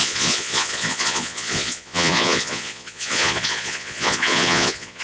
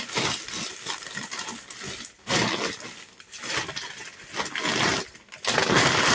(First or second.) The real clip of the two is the second